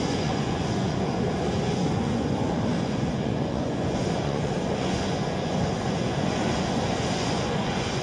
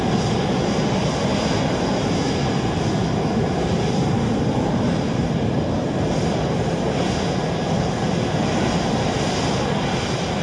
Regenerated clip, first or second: first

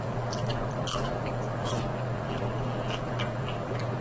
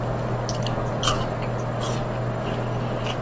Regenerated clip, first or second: first